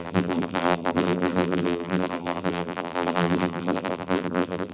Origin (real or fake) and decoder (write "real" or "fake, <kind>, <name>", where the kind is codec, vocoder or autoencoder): fake, vocoder, BigVGAN v2